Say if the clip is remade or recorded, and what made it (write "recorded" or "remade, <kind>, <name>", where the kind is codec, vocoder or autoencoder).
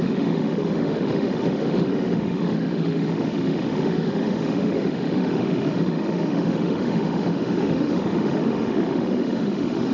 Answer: remade, autoencoder, DAC-VAE